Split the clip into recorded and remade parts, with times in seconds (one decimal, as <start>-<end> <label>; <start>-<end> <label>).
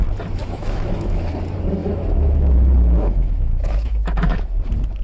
0.0-0.4 recorded; 0.4-1.3 remade; 1.3-1.8 recorded; 1.8-4.5 remade; 4.5-5.0 recorded